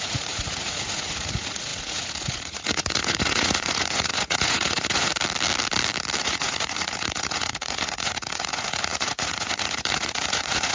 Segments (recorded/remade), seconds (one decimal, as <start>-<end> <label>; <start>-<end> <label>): 0.0-5.1 remade; 5.1-6.2 recorded; 6.2-10.7 remade